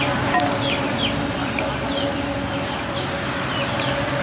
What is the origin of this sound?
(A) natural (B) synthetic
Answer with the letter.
A